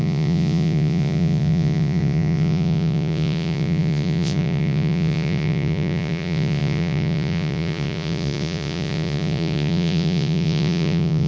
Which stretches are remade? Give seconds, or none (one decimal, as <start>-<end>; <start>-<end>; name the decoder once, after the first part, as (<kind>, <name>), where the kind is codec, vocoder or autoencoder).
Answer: 0.0-11.3 (vocoder, Vocos)